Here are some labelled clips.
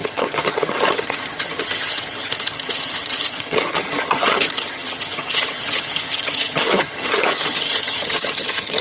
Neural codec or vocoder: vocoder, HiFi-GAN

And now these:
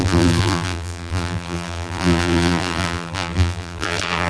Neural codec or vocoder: vocoder, BigVGAN v2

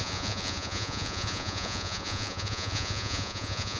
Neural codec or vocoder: vocoder, Vocos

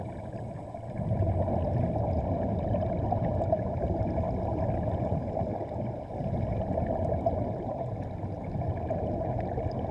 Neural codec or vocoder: none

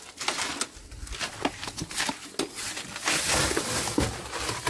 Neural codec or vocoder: none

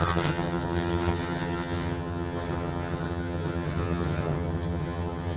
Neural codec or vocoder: vocoder, HiFi-GAN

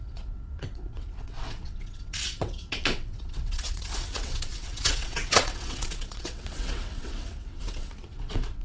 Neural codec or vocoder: vocoder, WaveNeXt